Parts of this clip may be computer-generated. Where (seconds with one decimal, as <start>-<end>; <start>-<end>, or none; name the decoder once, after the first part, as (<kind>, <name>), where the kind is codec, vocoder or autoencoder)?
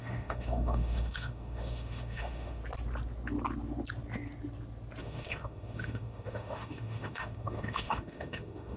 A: 0.0-2.6 (autoencoder, DAC-VAE); 5.0-8.8